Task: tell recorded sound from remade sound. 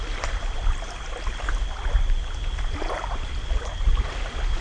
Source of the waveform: recorded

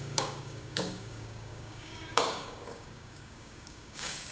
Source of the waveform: remade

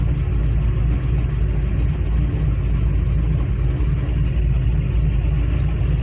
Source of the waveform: recorded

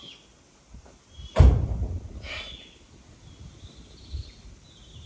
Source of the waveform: recorded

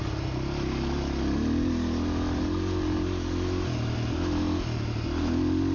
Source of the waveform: recorded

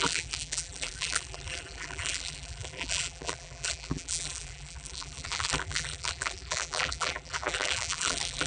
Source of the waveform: remade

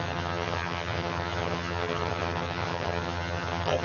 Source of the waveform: remade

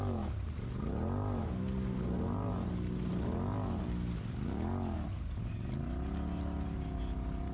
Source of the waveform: recorded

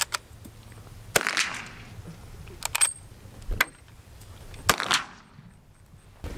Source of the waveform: recorded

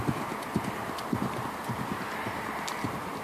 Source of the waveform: recorded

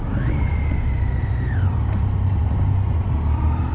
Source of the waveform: recorded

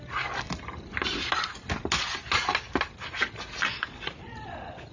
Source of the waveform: recorded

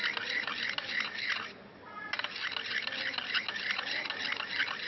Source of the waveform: recorded